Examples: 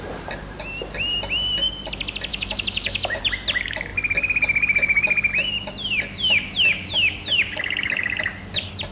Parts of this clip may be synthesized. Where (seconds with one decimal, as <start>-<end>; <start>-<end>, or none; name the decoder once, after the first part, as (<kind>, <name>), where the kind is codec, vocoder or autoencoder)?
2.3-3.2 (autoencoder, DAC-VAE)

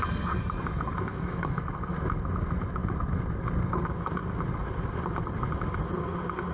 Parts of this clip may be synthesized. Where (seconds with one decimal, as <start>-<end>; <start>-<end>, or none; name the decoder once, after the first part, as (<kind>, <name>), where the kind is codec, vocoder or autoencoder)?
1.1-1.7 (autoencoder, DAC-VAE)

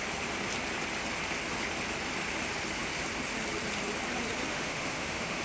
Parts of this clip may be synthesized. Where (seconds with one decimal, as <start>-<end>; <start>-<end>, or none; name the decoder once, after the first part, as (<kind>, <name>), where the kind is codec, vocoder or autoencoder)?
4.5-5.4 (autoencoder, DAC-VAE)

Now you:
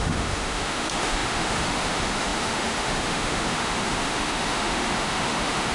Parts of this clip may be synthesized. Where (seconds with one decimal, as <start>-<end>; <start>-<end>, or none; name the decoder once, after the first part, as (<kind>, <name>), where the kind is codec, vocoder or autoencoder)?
0.0-5.7 (autoencoder, DAC-VAE)

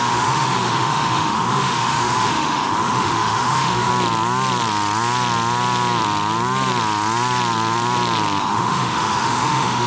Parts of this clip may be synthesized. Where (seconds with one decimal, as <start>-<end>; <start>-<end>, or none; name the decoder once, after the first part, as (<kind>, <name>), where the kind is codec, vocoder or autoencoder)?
0.0-3.9 (autoencoder, DAC-VAE); 8.4-9.9

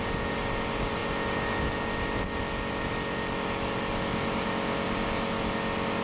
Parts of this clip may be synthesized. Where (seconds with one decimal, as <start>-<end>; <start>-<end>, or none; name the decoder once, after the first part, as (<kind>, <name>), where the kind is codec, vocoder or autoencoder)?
none

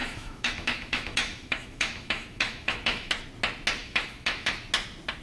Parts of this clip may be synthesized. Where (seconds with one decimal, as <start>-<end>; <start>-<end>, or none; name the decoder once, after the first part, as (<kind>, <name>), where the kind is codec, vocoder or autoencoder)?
0.0-3.1 (autoencoder, DAC-VAE); 3.8-4.5

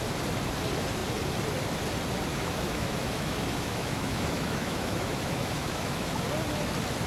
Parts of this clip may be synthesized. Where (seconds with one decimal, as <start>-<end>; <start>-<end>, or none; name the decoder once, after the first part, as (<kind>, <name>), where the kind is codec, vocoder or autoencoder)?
2.3-6.2 (autoencoder, DAC-VAE)